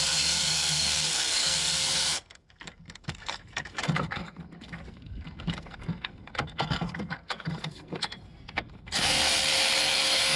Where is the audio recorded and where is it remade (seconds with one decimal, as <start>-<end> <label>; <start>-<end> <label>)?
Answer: 0.0-9.2 remade; 9.2-9.8 recorded; 9.8-10.4 remade